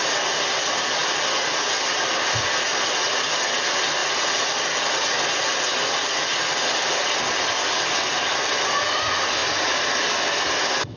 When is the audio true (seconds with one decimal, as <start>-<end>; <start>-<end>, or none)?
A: 0.0-11.0